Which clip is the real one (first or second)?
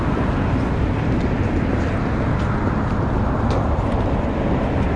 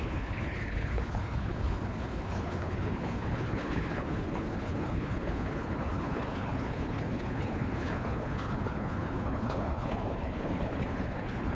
first